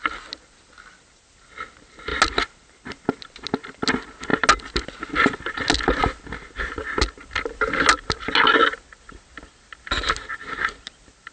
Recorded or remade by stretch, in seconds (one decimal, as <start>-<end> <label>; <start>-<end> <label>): 0.0-11.3 recorded